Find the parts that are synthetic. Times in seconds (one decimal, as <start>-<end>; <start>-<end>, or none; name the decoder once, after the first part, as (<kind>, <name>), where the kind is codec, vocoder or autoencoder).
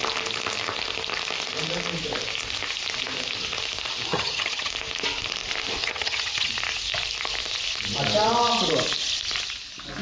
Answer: 4.1-4.7 (vocoder, HiFi-GAN); 5.8-6.5